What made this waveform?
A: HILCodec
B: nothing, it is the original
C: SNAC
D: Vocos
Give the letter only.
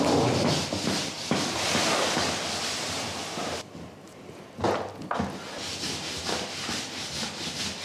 B